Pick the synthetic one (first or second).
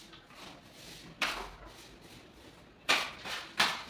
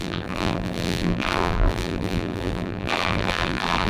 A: second